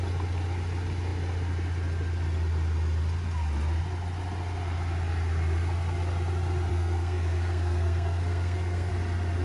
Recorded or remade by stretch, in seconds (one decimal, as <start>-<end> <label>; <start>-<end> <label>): 0.0-6.7 recorded; 6.7-8.9 remade; 8.9-9.4 recorded